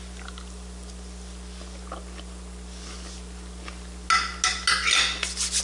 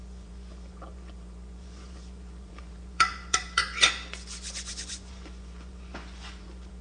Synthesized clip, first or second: second